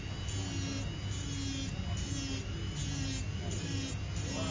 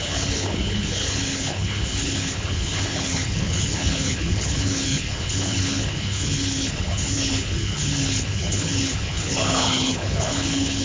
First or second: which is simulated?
second